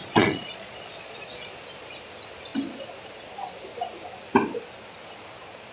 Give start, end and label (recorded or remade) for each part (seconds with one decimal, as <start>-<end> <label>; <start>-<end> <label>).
0.0-1.6 remade; 1.6-5.7 recorded